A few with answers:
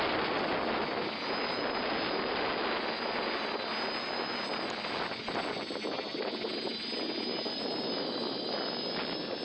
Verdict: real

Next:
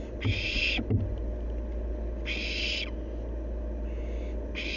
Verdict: real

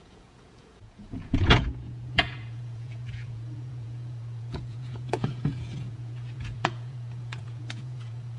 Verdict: fake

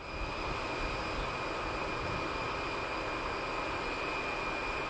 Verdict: real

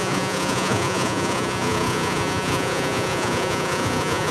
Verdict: fake